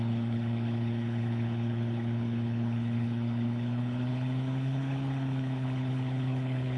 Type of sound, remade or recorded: remade